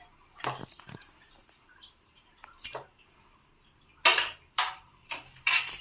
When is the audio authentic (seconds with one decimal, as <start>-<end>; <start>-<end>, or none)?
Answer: 0.0-1.4; 3.5-4.1